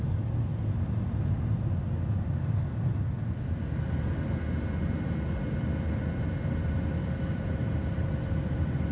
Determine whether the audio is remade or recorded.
recorded